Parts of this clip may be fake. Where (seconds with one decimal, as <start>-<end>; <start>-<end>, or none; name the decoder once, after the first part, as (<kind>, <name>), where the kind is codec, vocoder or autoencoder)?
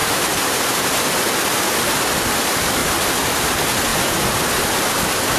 0.0-1.0 (vocoder, BigVGAN v2); 2.8-3.5